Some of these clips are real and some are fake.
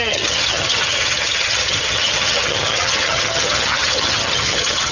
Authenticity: fake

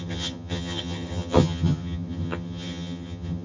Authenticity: fake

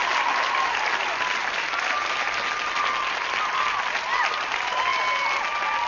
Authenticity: real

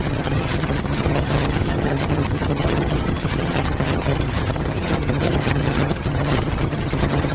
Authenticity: fake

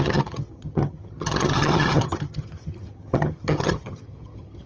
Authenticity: fake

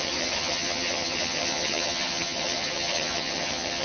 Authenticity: fake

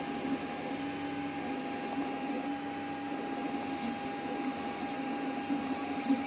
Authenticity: real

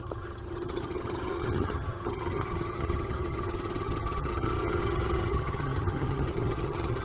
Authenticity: fake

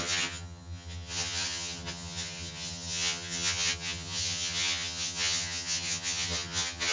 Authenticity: fake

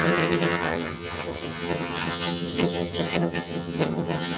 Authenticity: fake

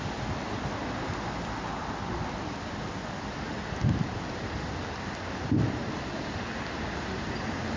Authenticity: real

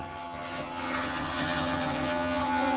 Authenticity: fake